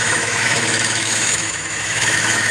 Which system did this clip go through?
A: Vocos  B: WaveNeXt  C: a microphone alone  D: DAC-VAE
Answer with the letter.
D